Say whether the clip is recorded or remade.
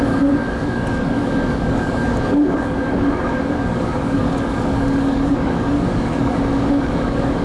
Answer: remade